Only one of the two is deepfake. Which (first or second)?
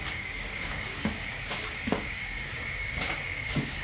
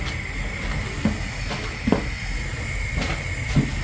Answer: first